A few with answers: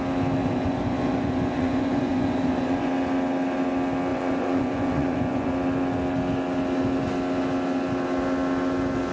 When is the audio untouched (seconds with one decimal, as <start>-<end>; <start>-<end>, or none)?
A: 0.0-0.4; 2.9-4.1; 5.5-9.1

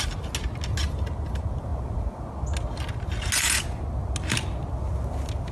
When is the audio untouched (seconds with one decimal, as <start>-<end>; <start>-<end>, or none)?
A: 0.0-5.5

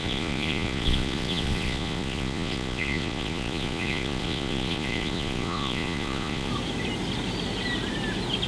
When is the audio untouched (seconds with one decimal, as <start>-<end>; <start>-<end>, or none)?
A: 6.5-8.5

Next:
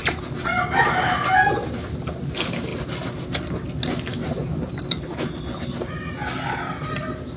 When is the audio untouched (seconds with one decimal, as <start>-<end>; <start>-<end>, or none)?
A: 0.0-7.4